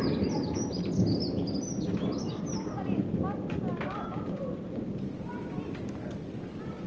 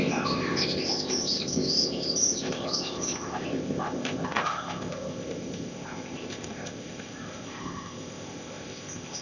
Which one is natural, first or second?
first